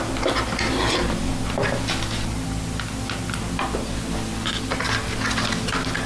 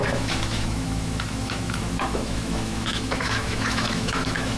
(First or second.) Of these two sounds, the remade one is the second